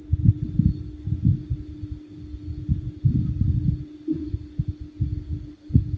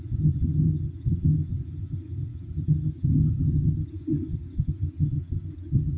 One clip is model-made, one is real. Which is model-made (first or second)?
second